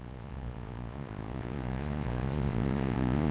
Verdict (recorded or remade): remade